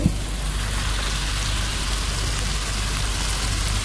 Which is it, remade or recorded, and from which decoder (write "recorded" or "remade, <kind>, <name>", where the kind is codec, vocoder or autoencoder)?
recorded